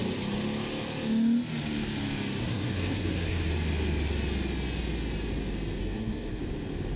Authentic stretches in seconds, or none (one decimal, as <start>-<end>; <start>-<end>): 0.0-2.4; 3.5-5.8; 6.4-7.0